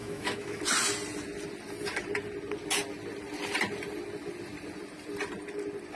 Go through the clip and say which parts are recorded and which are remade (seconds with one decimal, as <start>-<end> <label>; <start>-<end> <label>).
0.0-0.6 remade; 0.6-6.0 recorded